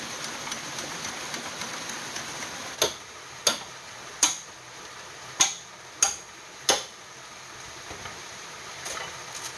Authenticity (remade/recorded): recorded